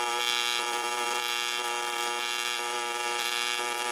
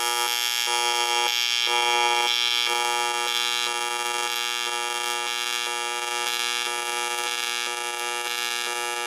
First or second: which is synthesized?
first